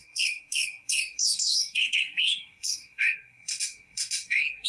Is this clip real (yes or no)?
no